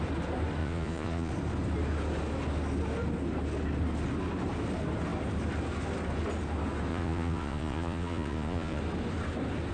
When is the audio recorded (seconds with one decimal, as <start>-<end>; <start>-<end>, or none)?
0.0-0.6; 1.3-6.9; 8.8-9.7